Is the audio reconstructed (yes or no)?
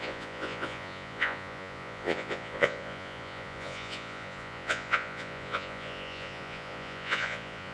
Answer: yes